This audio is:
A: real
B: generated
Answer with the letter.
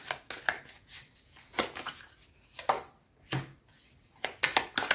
A